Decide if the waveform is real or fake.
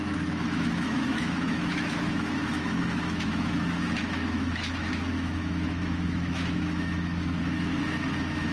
fake